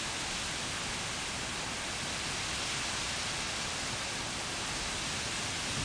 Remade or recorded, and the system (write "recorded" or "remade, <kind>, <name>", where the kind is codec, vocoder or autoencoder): recorded